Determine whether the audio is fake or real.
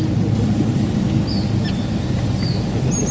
real